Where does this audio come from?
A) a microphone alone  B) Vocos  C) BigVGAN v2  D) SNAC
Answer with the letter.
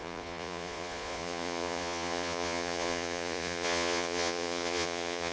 B